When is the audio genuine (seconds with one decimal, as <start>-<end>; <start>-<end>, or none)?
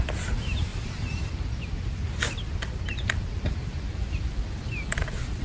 0.0-5.4